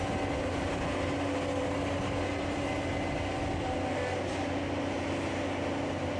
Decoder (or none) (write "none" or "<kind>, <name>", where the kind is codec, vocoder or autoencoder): none